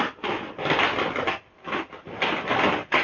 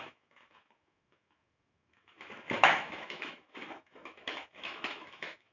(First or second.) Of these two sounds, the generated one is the second